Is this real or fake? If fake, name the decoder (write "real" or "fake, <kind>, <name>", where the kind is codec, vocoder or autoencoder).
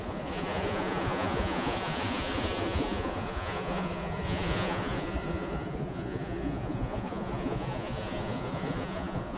fake, vocoder, Vocos